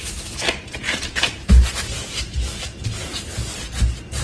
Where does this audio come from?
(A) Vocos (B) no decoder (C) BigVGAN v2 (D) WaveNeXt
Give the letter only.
C